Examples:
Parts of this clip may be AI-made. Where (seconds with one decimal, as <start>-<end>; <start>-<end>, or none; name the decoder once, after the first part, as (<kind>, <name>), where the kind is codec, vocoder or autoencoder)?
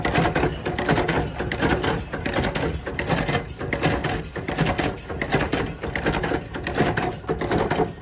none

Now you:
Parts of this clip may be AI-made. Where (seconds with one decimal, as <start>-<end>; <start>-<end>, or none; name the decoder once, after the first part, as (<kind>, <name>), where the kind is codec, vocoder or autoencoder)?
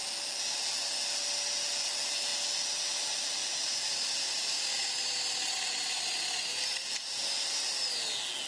none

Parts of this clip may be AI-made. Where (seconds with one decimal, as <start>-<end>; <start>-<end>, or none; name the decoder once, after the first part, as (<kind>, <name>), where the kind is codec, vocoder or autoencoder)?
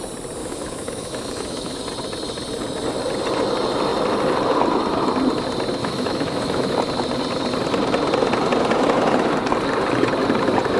0.4-1.8 (autoencoder, DAC-VAE); 5.8-6.7